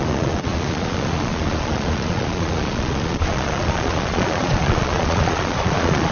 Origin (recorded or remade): remade